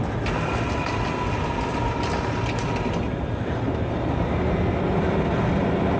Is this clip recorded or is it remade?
recorded